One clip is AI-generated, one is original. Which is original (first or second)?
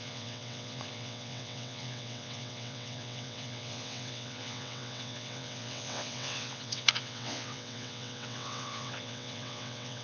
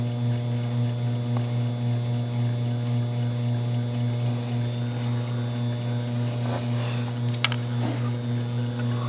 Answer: second